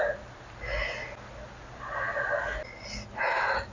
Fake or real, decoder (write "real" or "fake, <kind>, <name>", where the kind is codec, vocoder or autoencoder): real